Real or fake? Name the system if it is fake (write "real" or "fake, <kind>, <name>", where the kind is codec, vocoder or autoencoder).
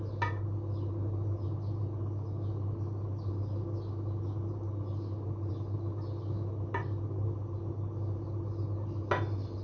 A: real